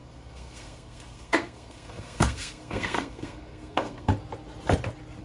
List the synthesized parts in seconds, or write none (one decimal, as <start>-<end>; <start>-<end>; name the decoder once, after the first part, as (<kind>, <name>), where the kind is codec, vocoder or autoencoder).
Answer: 0.0-4.1 (codec, SNAC)